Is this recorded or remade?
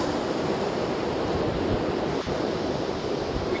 recorded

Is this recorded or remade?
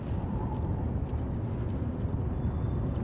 recorded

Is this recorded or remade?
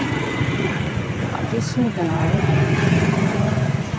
remade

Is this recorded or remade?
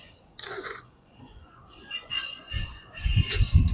remade